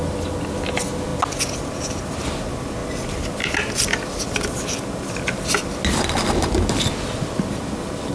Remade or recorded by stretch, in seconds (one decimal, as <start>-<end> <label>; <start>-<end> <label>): 0.0-8.1 recorded